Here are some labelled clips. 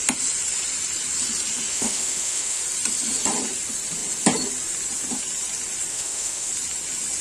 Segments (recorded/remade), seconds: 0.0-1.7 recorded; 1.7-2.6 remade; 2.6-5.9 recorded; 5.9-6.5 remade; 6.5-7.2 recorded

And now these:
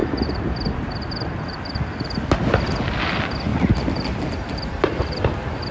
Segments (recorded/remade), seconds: 0.0-5.7 recorded

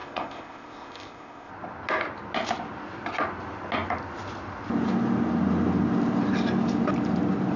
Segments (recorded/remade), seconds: 0.0-1.5 remade; 1.5-7.6 recorded

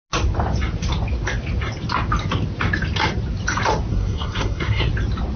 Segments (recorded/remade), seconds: 0.0-3.9 recorded; 3.9-4.9 remade; 4.9-5.4 recorded

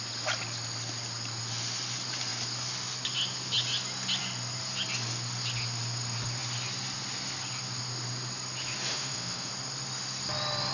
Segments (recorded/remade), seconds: 0.0-8.9 recorded; 8.9-9.5 remade; 9.5-10.7 recorded

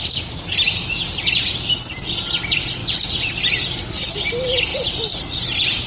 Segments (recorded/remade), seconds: 0.0-5.9 recorded

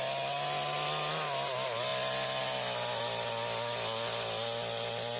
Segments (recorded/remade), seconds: 0.0-5.2 recorded